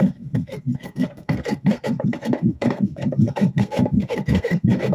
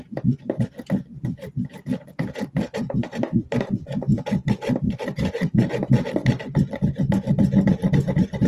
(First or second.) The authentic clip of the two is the second